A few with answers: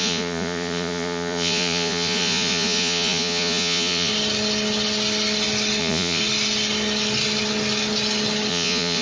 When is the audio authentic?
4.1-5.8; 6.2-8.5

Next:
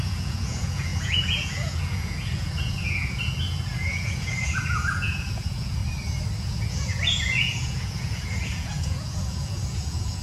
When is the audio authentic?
5.8-6.4

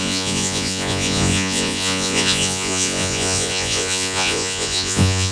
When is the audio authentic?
none

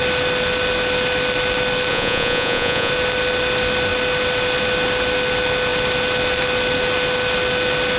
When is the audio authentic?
0.0-1.9; 2.9-8.0

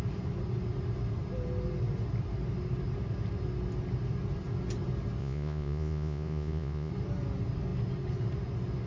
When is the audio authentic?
0.0-5.2; 6.9-8.9

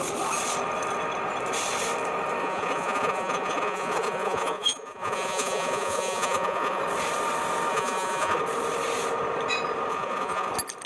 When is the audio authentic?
0.0-2.4; 6.8-7.7; 8.4-9.9; 10.5-10.9

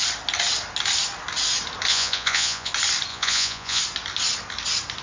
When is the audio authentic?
0.0-1.9; 2.7-3.1; 3.8-5.0